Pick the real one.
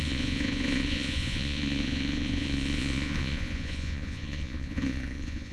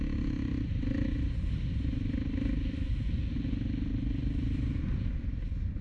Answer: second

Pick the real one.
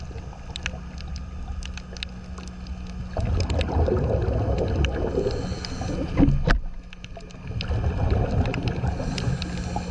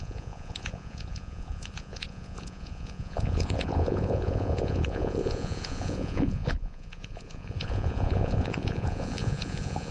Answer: first